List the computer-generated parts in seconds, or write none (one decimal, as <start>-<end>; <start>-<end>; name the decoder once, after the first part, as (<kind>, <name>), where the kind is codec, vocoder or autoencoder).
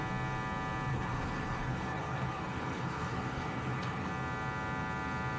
0.9-4.1 (codec, HILCodec)